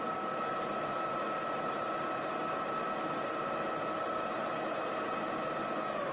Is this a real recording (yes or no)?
yes